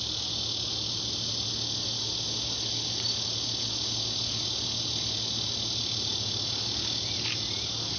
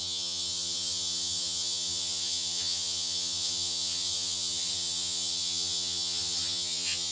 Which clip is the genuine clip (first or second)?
first